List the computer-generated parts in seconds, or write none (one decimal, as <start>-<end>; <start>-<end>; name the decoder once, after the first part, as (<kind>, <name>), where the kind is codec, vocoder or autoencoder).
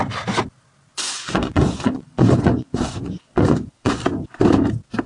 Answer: 0.9-4.0 (vocoder, Vocos)